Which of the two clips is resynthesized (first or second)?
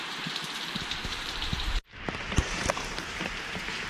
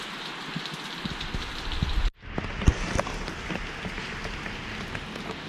first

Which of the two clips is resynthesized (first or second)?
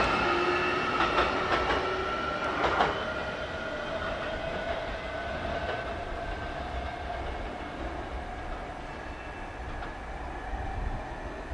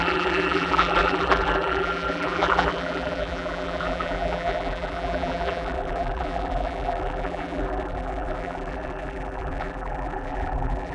second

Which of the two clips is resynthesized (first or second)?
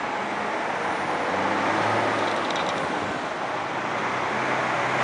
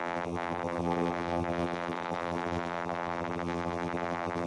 second